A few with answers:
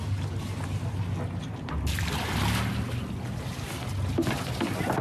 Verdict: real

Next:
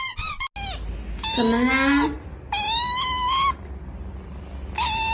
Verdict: real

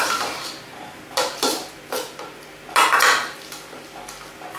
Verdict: real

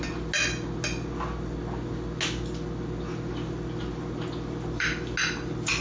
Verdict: real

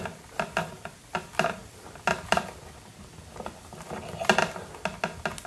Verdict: real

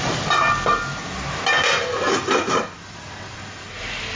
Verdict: real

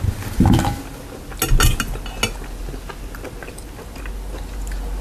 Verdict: real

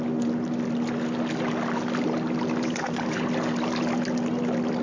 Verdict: real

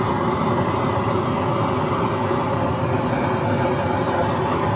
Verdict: real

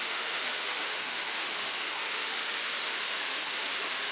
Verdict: fake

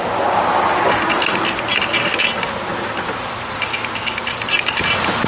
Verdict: real